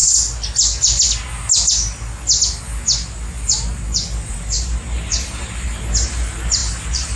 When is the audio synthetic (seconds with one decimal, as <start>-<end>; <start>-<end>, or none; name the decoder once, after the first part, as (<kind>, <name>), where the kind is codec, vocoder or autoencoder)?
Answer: 4.3-7.2 (vocoder, BigVGAN v2)